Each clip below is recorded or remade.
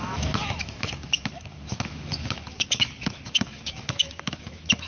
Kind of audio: remade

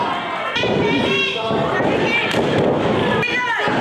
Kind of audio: recorded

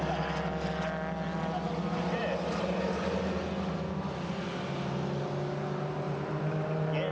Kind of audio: recorded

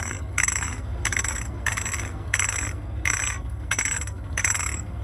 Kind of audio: remade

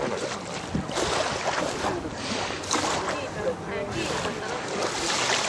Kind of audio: recorded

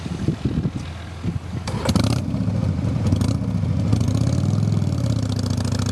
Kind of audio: recorded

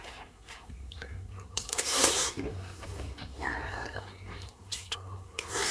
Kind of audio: remade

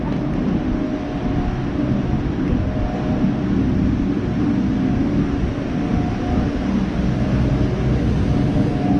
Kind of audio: recorded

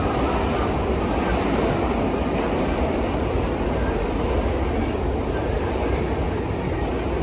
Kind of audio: recorded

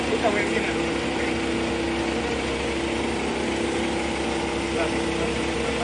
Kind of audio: recorded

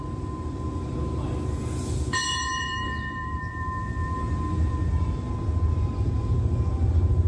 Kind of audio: remade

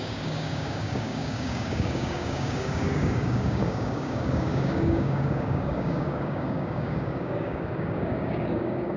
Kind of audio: remade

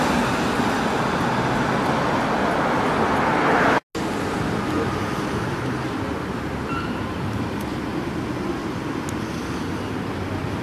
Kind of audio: recorded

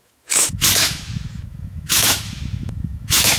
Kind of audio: remade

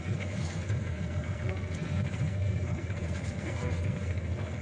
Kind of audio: remade